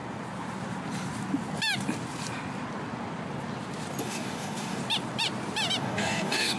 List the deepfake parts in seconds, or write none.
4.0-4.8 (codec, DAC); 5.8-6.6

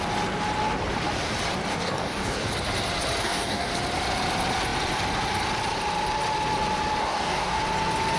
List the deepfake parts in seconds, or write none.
1.7-2.5 (codec, DAC); 3.2-3.7; 7.0-7.6

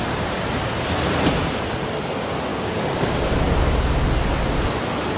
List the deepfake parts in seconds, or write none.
2.5-3.1 (codec, DAC)

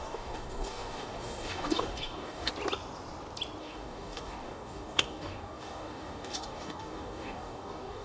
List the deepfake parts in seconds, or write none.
0.0-2.5 (codec, DAC); 3.6-8.0

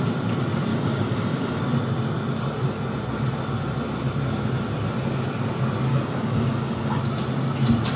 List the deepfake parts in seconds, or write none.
0.7-1.6 (codec, DAC); 5.9-7.0

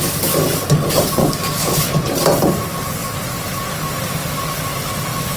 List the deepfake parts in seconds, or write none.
1.2-1.8 (codec, DAC)

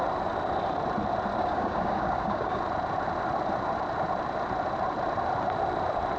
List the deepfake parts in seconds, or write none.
1.3-2.6 (codec, DAC)

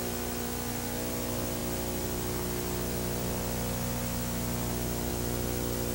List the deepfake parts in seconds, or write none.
none